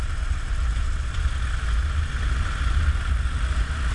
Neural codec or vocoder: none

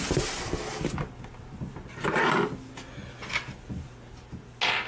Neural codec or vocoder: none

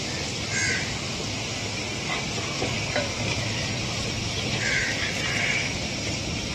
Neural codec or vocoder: none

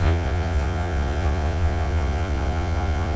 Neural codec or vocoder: vocoder, Vocos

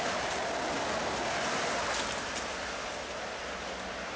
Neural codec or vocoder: none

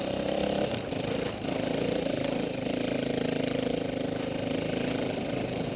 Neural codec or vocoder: none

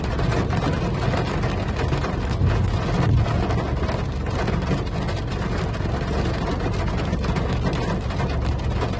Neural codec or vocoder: none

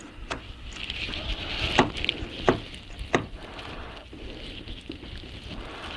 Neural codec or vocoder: none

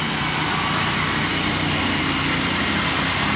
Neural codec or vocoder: none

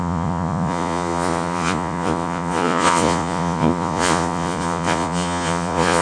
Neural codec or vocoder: vocoder, Vocos